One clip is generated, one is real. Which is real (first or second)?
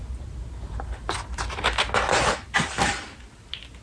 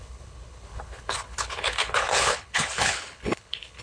first